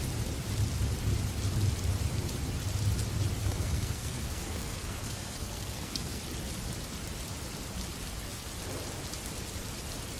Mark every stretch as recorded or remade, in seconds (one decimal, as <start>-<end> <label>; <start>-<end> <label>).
0.0-3.4 recorded; 3.4-6.2 remade; 6.2-10.2 recorded